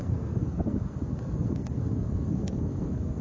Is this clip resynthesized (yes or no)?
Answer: yes